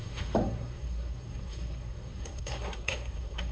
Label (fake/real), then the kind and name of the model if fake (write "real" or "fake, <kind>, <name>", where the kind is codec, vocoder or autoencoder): fake, codec, SNAC